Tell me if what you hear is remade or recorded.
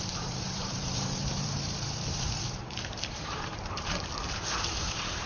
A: remade